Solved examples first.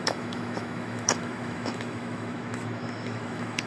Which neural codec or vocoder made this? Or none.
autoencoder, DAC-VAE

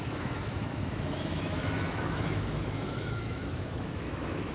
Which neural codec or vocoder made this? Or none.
autoencoder, DAC-VAE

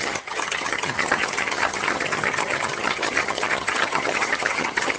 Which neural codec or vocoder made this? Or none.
vocoder, HiFi-GAN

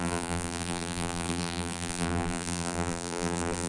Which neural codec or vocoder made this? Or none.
vocoder, BigVGAN v2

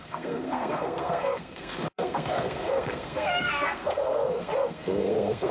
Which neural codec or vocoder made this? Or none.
codec, SNAC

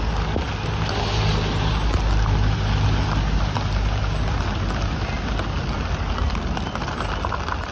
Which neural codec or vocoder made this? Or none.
none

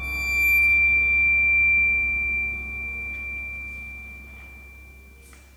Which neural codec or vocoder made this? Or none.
none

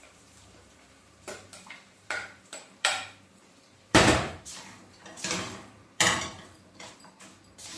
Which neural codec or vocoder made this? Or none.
vocoder, BigVGAN v2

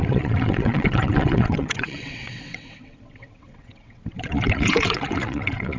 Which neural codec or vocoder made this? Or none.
vocoder, WaveNeXt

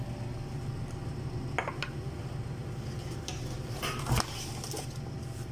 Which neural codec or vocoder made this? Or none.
none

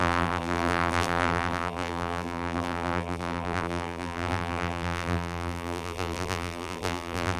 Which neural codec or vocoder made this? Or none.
vocoder, BigVGAN v2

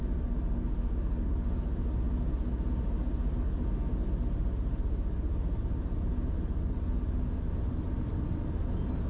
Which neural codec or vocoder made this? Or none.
none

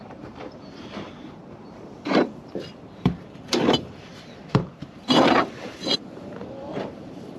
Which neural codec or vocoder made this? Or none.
vocoder, BigVGAN v2